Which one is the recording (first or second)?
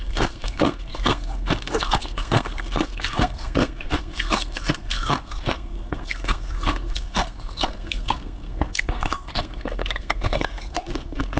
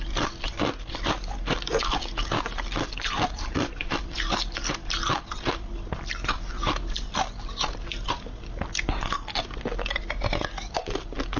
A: second